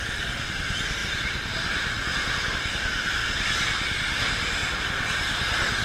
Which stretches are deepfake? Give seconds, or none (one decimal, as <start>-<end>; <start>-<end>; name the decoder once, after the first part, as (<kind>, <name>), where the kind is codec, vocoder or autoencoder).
3.2-4.8 (vocoder, BigVGAN v2)